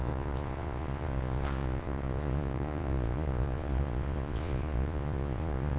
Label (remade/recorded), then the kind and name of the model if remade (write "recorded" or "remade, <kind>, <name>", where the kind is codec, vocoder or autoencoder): remade, vocoder, Vocos